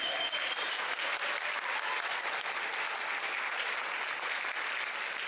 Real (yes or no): yes